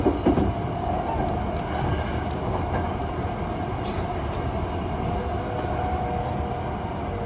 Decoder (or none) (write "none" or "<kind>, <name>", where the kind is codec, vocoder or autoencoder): none